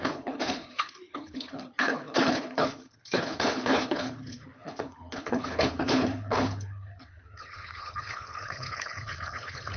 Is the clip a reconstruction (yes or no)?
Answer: yes